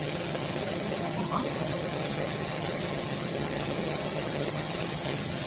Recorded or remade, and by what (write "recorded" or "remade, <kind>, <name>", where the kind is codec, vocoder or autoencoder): remade, vocoder, HiFi-GAN